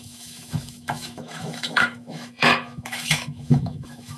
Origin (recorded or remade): remade